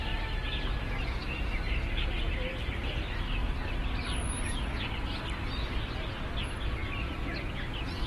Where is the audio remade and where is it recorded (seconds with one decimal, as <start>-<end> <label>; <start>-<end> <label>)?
0.0-8.1 recorded